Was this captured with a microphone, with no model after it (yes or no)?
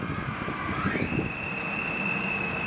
yes